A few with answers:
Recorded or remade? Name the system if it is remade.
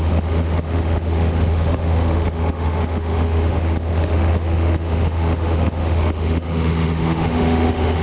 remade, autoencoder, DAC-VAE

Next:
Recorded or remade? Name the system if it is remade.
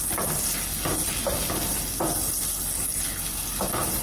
recorded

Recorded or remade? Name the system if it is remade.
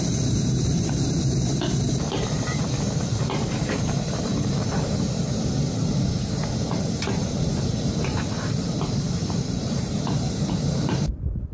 remade, vocoder, BigVGAN v2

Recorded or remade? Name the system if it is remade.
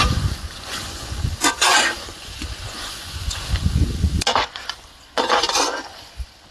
remade, vocoder, Vocos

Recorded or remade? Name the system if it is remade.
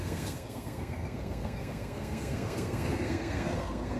remade, codec, SNAC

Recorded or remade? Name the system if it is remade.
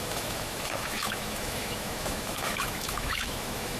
remade, autoencoder, DAC-VAE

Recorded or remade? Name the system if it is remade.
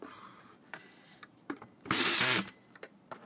remade, vocoder, BigVGAN v2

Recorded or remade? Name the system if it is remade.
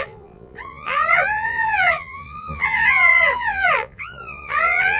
remade, vocoder, Vocos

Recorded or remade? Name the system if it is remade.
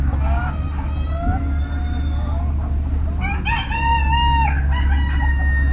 recorded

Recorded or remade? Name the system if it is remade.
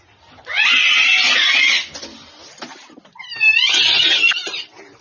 recorded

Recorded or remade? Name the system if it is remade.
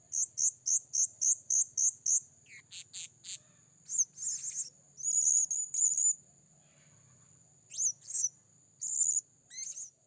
recorded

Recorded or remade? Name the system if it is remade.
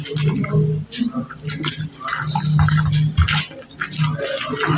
recorded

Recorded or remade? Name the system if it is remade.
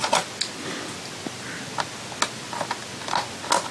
recorded